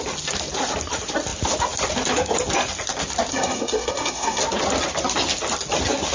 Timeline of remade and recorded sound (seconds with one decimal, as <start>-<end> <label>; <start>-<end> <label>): 0.0-3.3 recorded; 3.3-4.4 remade; 4.4-6.1 recorded